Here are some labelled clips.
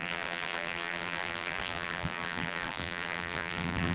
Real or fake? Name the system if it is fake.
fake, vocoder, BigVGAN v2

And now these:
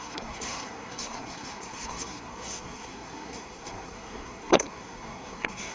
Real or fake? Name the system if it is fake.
fake, codec, SNAC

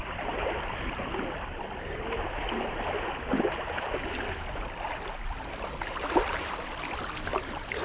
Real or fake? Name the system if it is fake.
real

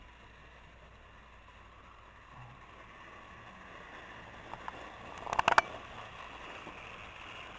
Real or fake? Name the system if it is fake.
real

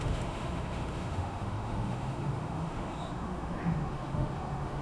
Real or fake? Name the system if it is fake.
fake, autoencoder, DAC-VAE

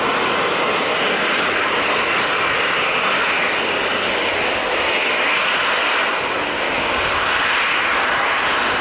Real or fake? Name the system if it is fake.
real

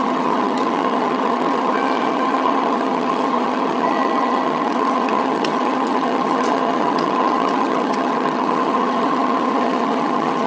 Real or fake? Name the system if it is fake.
fake, vocoder, HiFi-GAN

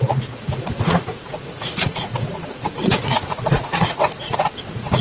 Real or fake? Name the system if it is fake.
fake, vocoder, Vocos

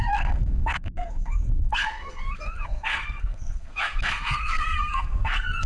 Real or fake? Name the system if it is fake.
fake, codec, SNAC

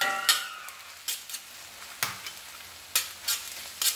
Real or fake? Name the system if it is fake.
real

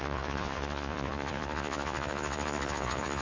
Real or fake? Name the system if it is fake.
fake, vocoder, Vocos